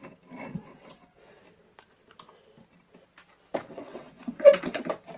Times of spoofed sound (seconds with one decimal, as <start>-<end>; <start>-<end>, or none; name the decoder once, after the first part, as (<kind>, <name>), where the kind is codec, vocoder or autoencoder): 0.5-1.4 (vocoder, WaveNeXt); 3.6-4.8